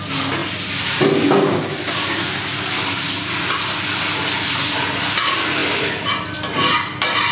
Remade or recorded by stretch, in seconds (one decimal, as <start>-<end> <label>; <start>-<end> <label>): 0.0-7.3 recorded

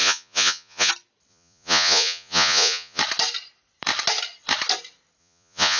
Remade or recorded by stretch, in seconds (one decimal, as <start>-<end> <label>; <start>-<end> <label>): 0.0-0.9 remade; 0.9-1.3 recorded; 1.3-3.0 remade; 3.0-5.2 recorded; 5.2-5.8 remade